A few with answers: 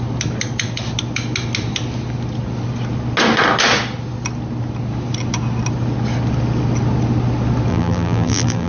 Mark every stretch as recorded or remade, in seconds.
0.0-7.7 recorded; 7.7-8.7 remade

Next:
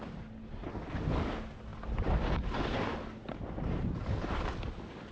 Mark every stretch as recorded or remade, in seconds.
0.0-5.1 recorded

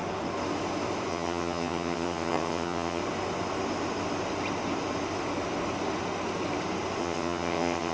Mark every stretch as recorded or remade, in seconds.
0.0-1.1 recorded; 1.1-3.0 remade; 3.0-7.0 recorded; 7.0-7.9 remade

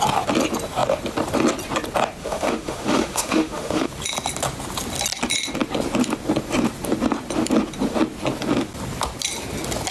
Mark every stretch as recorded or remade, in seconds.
0.0-2.2 recorded; 2.2-3.9 remade; 3.9-9.9 recorded